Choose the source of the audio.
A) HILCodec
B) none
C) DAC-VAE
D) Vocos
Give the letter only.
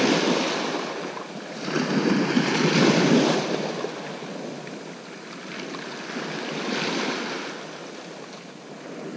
B